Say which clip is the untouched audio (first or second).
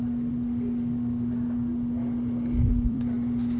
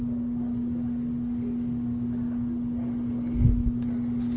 second